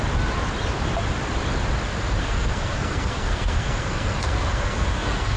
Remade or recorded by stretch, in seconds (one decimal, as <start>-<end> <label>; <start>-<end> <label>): 0.0-2.2 recorded; 2.2-5.4 remade